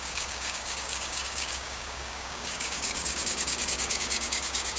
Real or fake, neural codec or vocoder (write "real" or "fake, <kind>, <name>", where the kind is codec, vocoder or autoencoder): fake, codec, DAC